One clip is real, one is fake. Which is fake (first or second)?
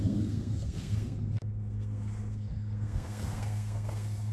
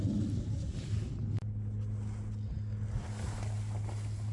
first